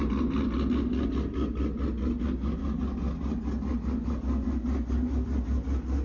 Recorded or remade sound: recorded